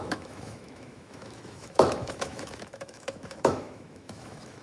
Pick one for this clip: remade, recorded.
remade